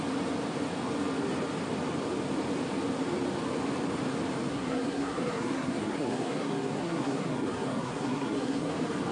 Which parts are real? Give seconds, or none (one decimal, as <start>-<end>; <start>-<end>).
0.0-4.5; 8.7-9.1